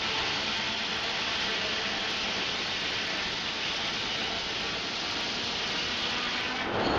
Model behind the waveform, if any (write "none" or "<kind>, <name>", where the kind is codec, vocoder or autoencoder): none